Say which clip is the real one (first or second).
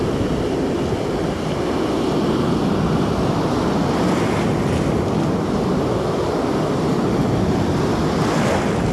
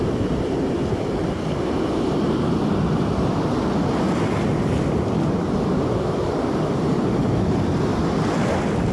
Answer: first